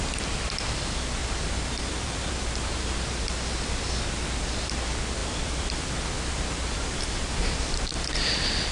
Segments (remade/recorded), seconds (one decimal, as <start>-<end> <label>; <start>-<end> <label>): 0.0-1.2 recorded; 1.2-3.0 remade; 3.0-5.2 recorded; 5.2-7.8 remade; 7.8-8.7 recorded